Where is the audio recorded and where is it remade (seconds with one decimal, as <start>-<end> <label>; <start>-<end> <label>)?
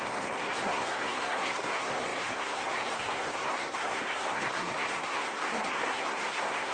0.0-6.7 remade